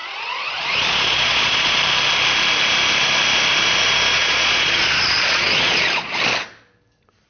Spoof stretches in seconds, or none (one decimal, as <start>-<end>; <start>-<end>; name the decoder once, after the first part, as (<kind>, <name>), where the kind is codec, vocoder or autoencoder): 0.0-1.8 (vocoder, Vocos); 4.1-6.2